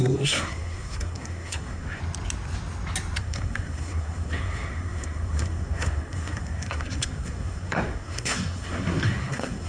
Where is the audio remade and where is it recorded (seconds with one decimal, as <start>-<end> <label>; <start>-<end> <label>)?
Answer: 0.0-2.0 remade; 2.0-3.2 recorded; 3.2-9.7 remade